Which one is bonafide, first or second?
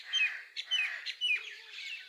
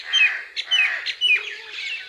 second